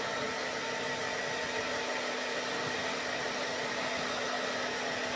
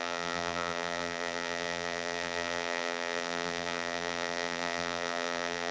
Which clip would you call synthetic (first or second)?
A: second